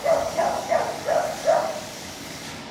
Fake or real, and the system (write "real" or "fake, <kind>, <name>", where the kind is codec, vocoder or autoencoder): fake, codec, DAC